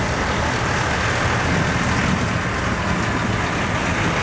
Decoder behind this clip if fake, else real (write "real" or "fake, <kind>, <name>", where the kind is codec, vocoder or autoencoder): real